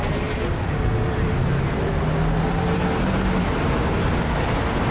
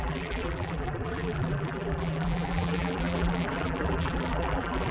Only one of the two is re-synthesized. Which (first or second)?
second